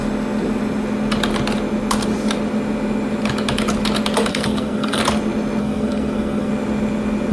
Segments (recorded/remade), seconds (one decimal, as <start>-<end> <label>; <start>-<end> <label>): 0.0-4.3 recorded; 4.3-5.0 remade; 5.0-5.6 recorded; 5.6-6.5 remade; 6.5-7.3 recorded